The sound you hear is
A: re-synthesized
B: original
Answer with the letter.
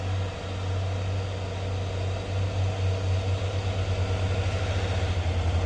B